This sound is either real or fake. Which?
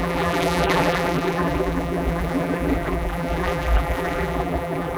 fake